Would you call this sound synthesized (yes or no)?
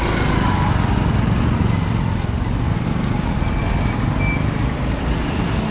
no